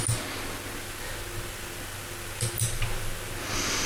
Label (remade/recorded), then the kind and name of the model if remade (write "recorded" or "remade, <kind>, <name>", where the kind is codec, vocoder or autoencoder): recorded